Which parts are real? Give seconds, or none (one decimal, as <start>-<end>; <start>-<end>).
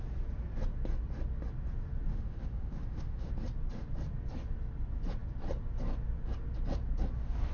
0.0-2.1; 3.3-7.5